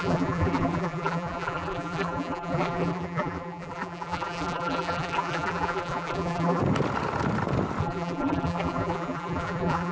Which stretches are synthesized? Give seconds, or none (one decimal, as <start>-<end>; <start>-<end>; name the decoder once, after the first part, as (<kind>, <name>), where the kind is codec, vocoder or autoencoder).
0.0-6.6 (vocoder, BigVGAN v2); 7.8-9.9